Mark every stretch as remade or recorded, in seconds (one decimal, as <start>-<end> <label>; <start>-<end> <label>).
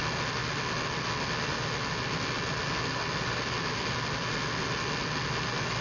0.0-5.8 recorded